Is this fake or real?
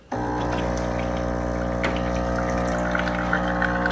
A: real